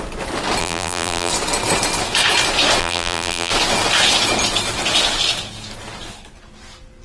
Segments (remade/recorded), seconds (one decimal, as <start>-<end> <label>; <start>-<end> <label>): 0.0-0.6 recorded; 0.6-1.3 remade; 1.3-2.8 recorded; 2.8-3.5 remade; 3.5-7.0 recorded